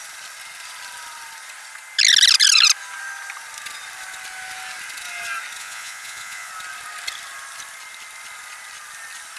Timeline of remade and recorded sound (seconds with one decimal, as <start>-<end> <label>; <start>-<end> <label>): 0.0-5.6 recorded; 5.6-6.5 remade; 6.5-9.4 recorded

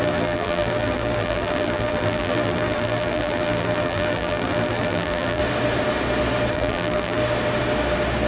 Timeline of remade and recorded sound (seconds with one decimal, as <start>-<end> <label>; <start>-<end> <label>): 0.0-5.4 remade; 5.4-6.5 recorded; 6.5-7.2 remade; 7.2-8.3 recorded

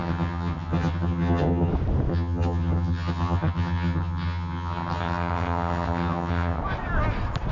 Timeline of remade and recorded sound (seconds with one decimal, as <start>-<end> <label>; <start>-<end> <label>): 0.0-1.7 remade; 1.7-2.1 recorded; 2.1-6.6 remade; 6.6-7.5 recorded

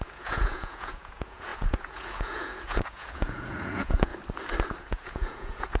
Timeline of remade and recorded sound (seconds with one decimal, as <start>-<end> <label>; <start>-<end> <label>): 0.0-4.1 remade; 4.1-4.8 recorded; 4.8-5.8 remade

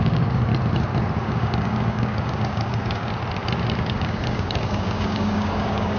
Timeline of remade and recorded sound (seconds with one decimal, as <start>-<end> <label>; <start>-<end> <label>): 0.0-0.5 remade; 0.5-1.2 recorded; 1.2-3.1 remade; 3.1-3.7 recorded; 3.7-6.0 remade